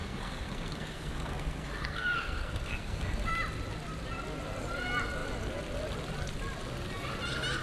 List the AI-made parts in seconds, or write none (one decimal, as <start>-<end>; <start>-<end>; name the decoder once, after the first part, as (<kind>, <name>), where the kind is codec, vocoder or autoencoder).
0.0-3.3 (codec, SNAC)